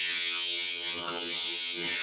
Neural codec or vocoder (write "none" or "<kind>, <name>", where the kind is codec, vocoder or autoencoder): vocoder, HiFi-GAN